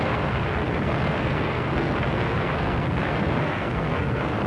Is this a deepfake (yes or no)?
yes